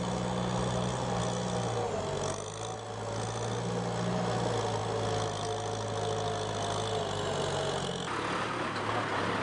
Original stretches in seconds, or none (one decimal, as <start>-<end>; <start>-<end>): 0.0-9.4